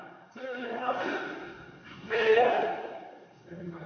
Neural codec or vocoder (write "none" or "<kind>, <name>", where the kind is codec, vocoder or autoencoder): codec, SNAC